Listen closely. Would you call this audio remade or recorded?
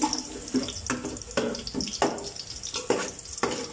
recorded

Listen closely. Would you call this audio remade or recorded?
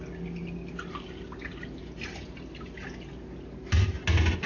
recorded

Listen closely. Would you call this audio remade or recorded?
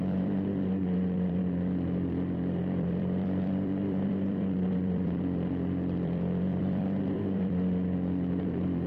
remade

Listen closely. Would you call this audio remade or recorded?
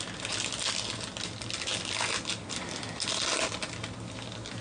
recorded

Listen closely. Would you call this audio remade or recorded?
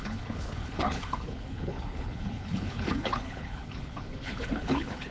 remade